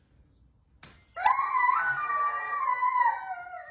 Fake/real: real